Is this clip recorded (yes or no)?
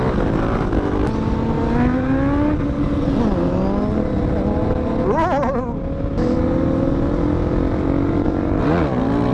yes